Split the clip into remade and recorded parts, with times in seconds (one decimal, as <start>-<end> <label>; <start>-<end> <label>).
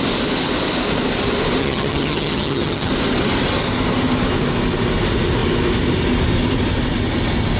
0.0-1.6 recorded; 1.6-2.9 remade; 2.9-7.6 recorded